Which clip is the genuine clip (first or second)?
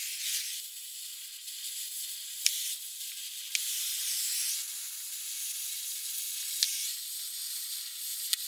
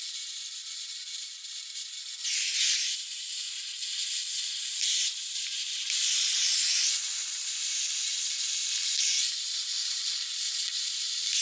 first